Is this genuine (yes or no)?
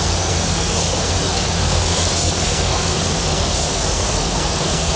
no